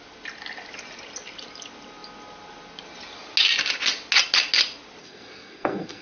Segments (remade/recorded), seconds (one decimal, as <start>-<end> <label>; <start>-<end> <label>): 0.0-5.0 recorded; 5.0-6.0 remade